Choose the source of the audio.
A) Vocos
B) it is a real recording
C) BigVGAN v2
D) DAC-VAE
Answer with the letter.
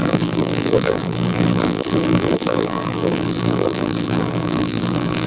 C